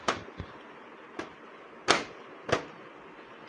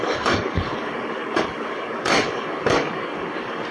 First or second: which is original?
first